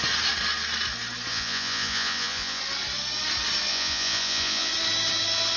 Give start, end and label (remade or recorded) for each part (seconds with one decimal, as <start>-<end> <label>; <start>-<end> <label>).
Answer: 0.0-1.3 recorded; 1.3-2.6 remade; 2.6-3.7 recorded; 3.7-4.7 remade; 4.7-5.6 recorded